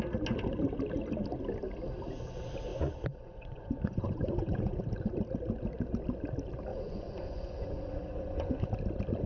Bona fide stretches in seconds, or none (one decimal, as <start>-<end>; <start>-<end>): 0.0-2.7; 4.8-6.7; 8.7-9.3